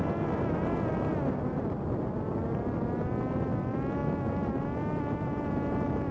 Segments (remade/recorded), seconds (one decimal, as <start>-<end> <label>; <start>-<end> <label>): 0.0-6.1 recorded